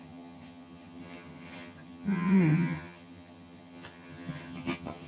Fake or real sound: fake